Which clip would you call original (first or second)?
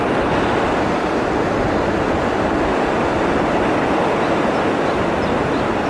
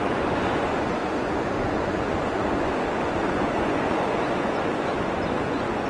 first